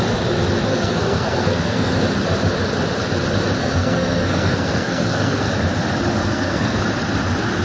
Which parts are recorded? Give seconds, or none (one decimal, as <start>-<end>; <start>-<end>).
0.0-0.7; 1.9-3.6; 5.5-6.2; 6.8-7.6